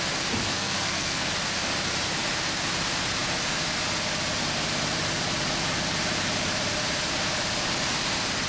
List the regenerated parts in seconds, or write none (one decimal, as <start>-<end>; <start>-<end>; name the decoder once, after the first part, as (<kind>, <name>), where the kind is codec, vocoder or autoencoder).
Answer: 0.5-1.3 (codec, SNAC)